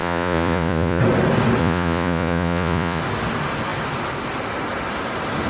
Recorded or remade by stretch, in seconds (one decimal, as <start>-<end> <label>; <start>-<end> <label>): 0.0-1.0 remade; 1.0-1.6 recorded; 1.6-3.0 remade; 3.0-5.5 recorded